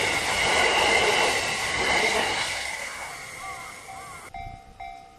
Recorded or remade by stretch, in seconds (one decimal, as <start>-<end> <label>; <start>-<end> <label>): 0.0-2.0 recorded; 2.0-3.1 remade; 3.1-5.2 recorded